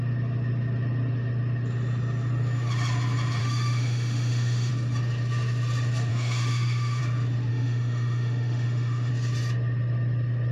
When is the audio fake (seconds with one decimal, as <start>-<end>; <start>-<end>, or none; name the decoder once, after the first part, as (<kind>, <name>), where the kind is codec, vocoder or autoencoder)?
3.4-4.7 (autoencoder, DAC-VAE); 6.1-7.0; 7.5-9.1